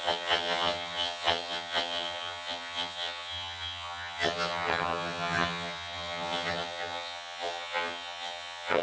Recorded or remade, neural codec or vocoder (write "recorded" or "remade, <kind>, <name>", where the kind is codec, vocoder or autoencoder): remade, vocoder, HiFi-GAN